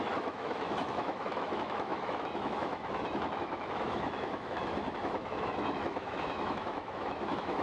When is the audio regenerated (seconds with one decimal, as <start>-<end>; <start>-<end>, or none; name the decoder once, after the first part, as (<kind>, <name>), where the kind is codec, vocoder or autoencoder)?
0.0-7.6 (autoencoder, DAC-VAE)